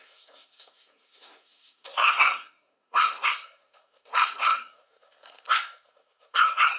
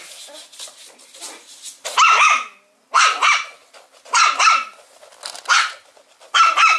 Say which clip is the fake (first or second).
first